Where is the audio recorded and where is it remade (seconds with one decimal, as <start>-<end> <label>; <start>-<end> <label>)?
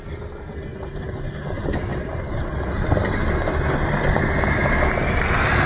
0.0-1.9 recorded; 1.9-2.5 remade; 2.5-5.7 recorded